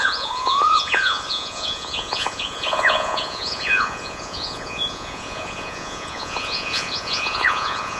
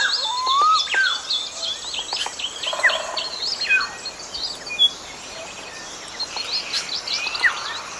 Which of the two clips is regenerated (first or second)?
first